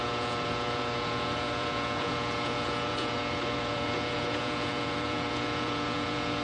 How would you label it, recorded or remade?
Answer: remade